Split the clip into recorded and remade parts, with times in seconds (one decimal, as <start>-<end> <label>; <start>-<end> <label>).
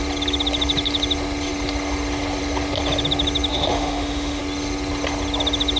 0.0-3.5 recorded; 3.5-4.4 remade; 4.4-5.8 recorded